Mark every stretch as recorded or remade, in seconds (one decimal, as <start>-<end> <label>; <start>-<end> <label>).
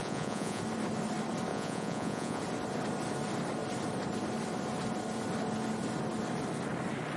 0.0-0.6 remade; 0.6-1.5 recorded; 1.5-2.4 remade; 2.4-7.2 recorded